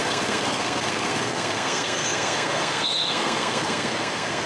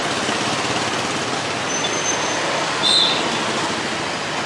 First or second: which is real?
second